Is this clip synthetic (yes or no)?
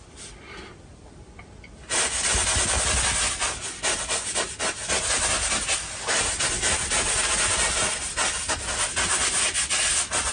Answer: no